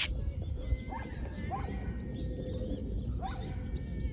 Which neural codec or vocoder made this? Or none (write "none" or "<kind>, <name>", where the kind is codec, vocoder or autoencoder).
none